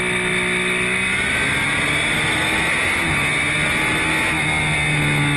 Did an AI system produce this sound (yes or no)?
no